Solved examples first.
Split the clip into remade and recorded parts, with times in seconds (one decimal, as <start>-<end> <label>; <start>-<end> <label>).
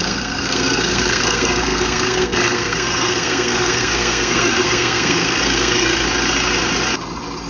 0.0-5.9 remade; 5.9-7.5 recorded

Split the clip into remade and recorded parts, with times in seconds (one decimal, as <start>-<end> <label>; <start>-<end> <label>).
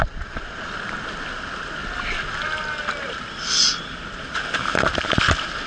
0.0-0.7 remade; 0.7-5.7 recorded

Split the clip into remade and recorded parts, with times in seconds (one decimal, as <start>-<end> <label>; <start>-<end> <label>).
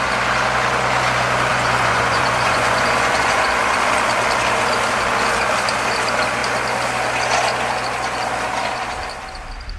0.0-1.5 recorded; 1.5-3.6 remade; 3.6-9.8 recorded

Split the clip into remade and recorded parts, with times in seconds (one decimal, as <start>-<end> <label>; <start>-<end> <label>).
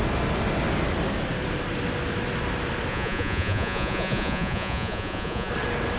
0.0-2.9 recorded; 2.9-5.5 remade; 5.5-6.0 recorded